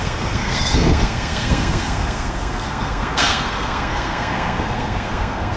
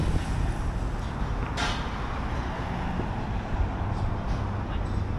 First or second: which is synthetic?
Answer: first